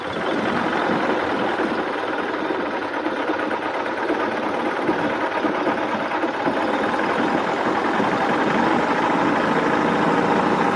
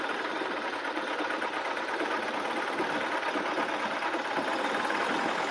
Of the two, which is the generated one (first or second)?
second